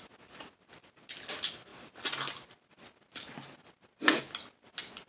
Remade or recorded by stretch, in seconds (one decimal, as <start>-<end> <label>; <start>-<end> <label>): 0.0-5.1 recorded